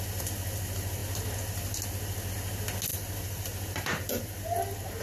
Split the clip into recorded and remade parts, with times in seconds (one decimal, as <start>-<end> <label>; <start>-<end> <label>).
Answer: 0.0-2.9 recorded; 2.9-4.4 remade; 4.4-5.0 recorded